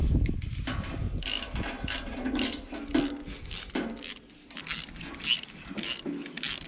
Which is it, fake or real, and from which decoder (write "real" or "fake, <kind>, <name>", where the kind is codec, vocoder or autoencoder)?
real